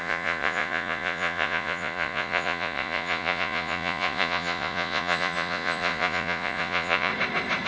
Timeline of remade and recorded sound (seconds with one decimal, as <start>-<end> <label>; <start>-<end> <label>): 0.0-7.1 remade; 7.1-7.7 recorded